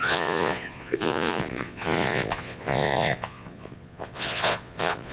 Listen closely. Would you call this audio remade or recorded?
remade